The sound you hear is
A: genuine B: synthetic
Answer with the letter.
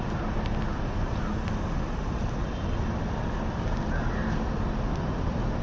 A